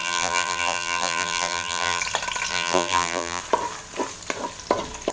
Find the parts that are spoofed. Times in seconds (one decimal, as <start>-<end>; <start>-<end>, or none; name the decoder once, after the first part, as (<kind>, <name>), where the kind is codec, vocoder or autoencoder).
0.0-2.0 (vocoder, BigVGAN v2); 2.5-3.4